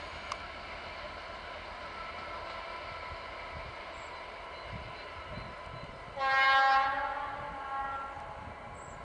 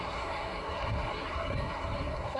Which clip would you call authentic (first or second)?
first